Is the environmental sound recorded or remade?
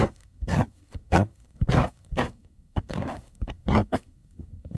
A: remade